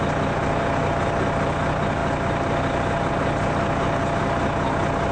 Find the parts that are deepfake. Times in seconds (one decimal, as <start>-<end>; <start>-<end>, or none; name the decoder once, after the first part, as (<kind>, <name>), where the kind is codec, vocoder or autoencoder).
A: none